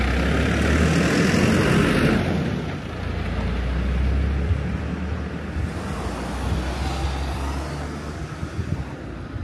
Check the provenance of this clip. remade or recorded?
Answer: recorded